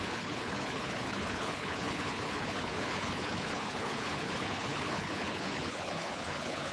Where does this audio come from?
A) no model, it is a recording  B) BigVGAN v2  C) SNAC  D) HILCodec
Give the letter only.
D